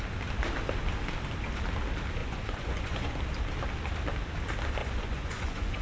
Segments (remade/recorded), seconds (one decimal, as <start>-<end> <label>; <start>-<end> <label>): 0.0-2.2 recorded; 2.2-3.2 remade; 3.2-4.8 recorded; 4.8-5.8 remade